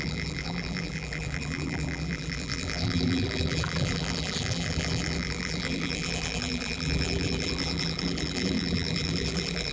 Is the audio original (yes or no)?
no